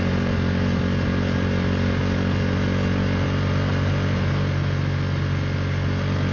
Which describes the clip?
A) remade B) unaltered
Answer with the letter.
B